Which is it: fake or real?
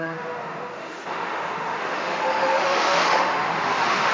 fake